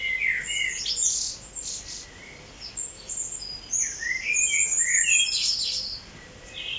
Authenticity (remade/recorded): recorded